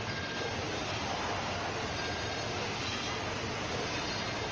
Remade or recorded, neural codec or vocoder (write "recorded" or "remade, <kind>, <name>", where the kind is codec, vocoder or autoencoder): recorded